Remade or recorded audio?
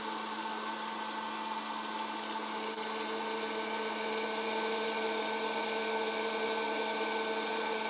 recorded